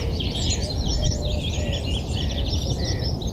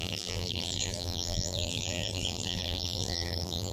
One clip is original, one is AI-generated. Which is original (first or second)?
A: first